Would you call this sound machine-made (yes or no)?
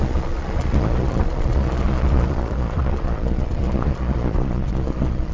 yes